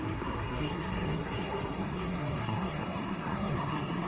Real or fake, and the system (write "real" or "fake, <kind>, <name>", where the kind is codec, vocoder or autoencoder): fake, codec, SNAC